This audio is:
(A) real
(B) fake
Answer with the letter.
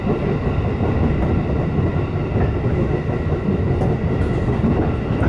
A